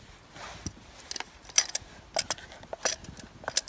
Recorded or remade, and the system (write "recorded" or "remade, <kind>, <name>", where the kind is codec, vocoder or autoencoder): recorded